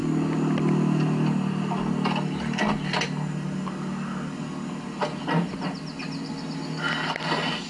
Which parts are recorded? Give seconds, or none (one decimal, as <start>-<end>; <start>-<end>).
0.0-7.7